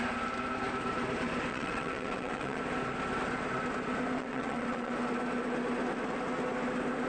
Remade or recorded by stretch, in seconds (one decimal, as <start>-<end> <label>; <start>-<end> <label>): 0.0-1.5 recorded; 1.5-2.6 remade; 2.6-4.2 recorded; 4.2-4.9 remade; 4.9-7.1 recorded